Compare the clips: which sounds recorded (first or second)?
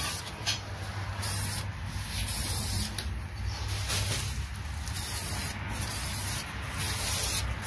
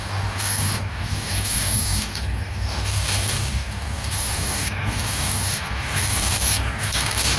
first